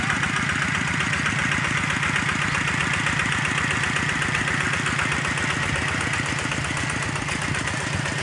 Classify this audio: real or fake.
real